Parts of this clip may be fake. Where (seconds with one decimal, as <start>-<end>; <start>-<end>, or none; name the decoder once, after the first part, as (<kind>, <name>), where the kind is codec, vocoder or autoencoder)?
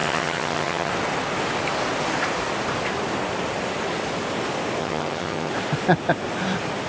0.0-0.9 (vocoder, HiFi-GAN); 4.8-5.5